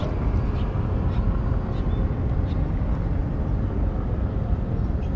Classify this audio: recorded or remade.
recorded